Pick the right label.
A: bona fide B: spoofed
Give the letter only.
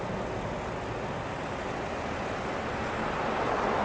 A